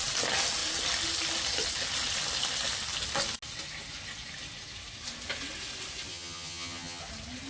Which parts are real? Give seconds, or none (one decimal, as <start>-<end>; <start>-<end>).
0.0-6.1; 7.0-7.5